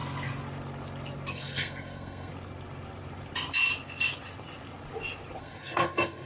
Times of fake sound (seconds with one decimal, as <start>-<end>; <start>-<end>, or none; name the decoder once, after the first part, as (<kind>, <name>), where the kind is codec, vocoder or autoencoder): 1.3-2.3 (codec, SNAC); 5.4-6.3